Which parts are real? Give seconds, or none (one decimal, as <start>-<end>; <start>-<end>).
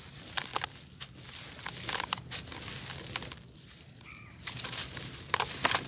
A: 0.5-4.0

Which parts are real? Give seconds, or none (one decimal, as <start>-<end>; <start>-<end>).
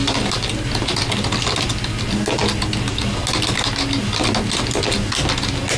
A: 0.0-5.8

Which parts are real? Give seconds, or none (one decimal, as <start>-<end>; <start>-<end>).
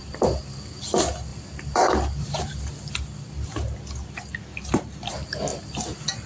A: 0.0-4.5; 5.1-6.3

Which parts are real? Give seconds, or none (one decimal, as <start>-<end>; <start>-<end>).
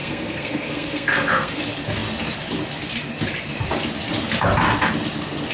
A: 1.6-5.5